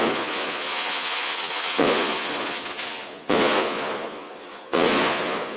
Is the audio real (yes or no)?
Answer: no